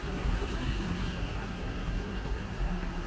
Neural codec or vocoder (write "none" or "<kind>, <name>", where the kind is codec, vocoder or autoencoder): codec, SNAC